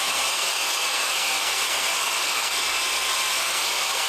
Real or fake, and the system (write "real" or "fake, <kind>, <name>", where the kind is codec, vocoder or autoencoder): fake, codec, SNAC